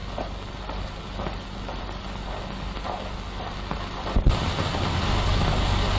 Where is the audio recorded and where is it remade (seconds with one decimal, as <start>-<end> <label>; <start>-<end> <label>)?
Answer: 0.0-6.0 recorded